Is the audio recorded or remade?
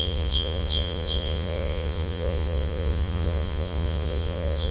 remade